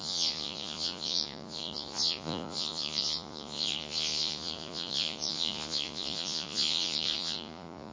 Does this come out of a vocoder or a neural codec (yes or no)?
yes